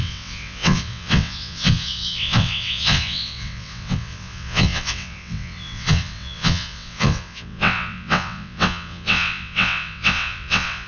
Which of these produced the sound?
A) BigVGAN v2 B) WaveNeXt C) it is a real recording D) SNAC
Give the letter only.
B